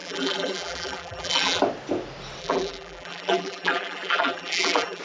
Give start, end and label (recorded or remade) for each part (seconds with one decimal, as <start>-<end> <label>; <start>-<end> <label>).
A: 0.0-1.6 remade; 1.6-2.4 recorded; 2.4-5.0 remade